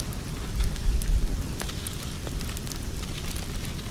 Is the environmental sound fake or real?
real